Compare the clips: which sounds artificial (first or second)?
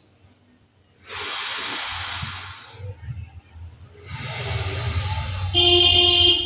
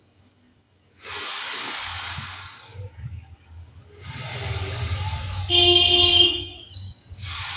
second